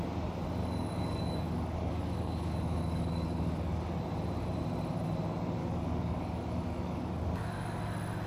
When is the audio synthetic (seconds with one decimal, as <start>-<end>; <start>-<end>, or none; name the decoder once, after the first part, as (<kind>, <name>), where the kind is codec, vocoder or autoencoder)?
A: 0.6-3.9 (codec, DAC); 5.6-7.8